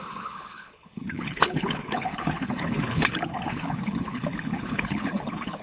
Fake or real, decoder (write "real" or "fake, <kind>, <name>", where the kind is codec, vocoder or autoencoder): fake, codec, HILCodec